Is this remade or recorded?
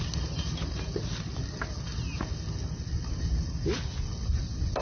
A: recorded